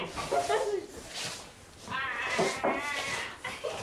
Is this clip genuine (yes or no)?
yes